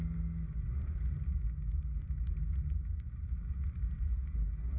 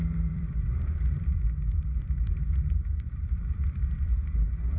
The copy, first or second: second